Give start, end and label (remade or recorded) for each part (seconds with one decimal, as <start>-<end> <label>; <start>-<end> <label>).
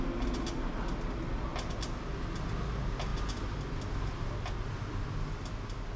0.0-6.0 recorded